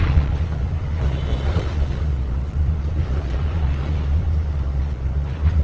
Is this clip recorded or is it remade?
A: remade